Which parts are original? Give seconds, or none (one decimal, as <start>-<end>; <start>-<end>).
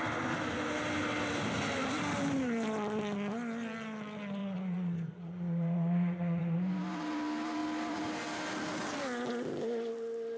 0.0-4.4; 6.4-10.4